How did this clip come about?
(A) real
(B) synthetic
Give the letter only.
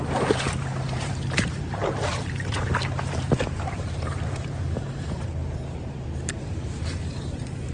B